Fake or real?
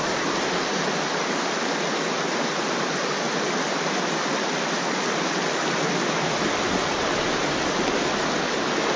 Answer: real